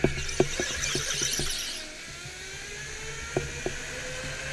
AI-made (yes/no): no